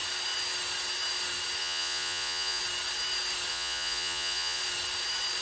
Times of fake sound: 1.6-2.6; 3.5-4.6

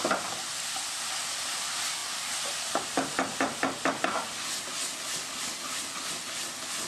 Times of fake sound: none

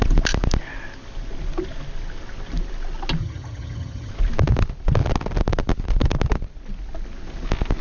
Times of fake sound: 3.2-4.1

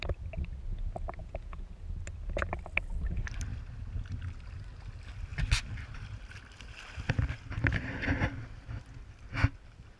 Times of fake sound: 1.2-1.7

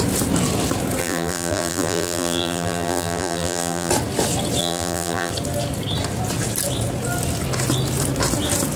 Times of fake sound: 1.0-3.9; 4.6-5.3